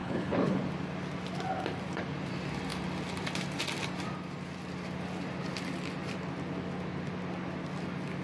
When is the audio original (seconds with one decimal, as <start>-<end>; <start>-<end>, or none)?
0.6-8.2